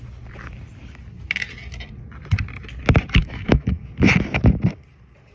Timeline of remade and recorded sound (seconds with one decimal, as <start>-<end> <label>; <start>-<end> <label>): 0.0-3.2 recorded; 3.2-3.8 remade; 3.8-5.3 recorded